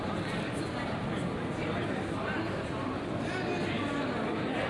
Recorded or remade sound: recorded